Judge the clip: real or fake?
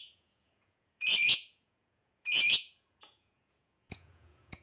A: fake